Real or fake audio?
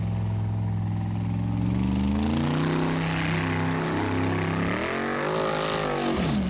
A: real